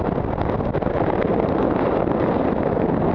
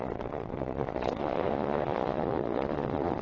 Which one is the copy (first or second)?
second